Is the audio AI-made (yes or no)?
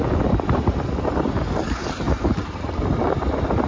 no